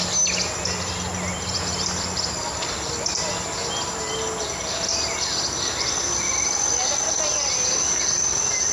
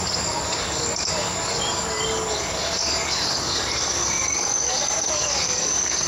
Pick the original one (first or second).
first